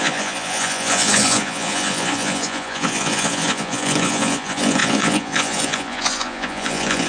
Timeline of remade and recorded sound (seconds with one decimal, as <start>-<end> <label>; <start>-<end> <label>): 0.0-7.1 remade